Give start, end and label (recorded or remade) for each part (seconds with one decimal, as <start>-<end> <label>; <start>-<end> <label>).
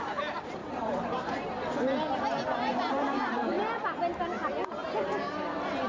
0.0-0.6 recorded; 0.6-1.5 remade; 1.5-2.7 recorded; 2.7-4.0 remade; 4.0-5.9 recorded